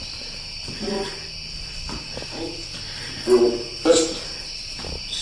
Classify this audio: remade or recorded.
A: recorded